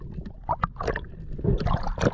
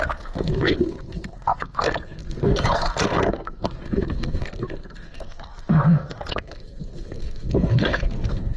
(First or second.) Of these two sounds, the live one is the first